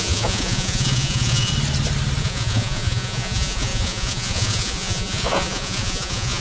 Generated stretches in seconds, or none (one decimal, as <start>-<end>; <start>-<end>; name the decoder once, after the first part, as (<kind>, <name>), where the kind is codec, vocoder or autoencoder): 0.0-1.5 (vocoder, Vocos); 2.2-6.4